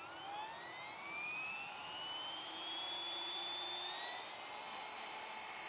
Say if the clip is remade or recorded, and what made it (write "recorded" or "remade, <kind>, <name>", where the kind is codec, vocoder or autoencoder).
recorded